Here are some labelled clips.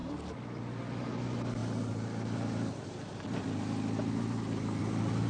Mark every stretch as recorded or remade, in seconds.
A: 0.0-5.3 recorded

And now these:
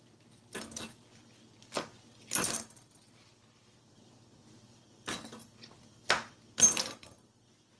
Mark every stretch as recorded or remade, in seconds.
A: 0.0-7.8 recorded

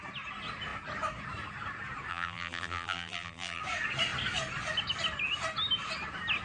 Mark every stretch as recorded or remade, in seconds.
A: 0.0-2.1 recorded; 2.1-3.6 remade; 3.6-6.4 recorded